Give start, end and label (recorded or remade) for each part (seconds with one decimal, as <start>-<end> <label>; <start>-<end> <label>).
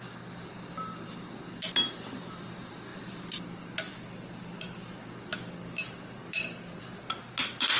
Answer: 0.0-7.8 recorded